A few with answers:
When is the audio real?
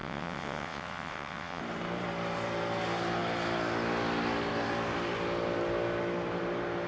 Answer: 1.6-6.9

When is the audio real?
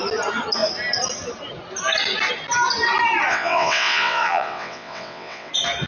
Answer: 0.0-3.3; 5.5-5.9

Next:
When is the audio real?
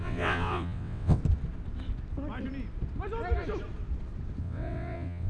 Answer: 1.2-4.4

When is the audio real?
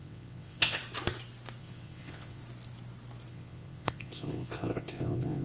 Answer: 0.8-1.6; 2.4-3.3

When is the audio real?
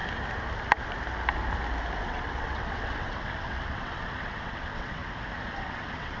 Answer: 0.0-2.0; 5.0-5.5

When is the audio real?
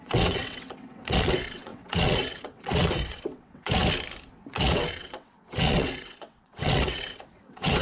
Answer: 3.8-4.5